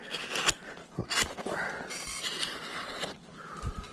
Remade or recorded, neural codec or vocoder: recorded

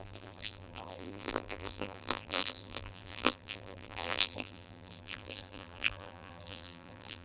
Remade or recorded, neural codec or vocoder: remade, vocoder, BigVGAN v2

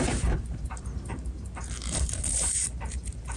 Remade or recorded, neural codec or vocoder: remade, vocoder, BigVGAN v2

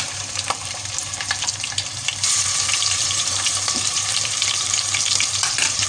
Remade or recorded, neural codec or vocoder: remade, vocoder, BigVGAN v2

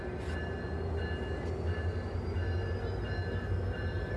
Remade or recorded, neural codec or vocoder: recorded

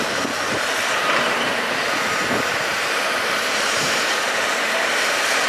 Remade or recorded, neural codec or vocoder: remade, vocoder, BigVGAN v2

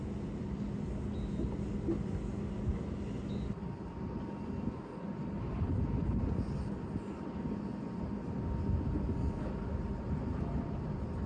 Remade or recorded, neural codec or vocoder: recorded